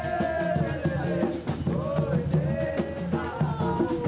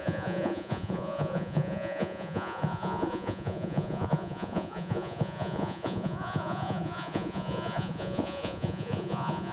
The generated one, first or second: second